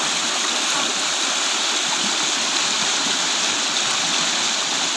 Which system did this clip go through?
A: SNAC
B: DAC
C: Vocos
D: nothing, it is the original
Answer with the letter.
D